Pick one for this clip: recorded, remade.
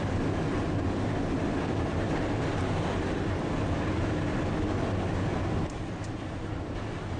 recorded